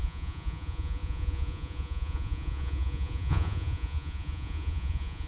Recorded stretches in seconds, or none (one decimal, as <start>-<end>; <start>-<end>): none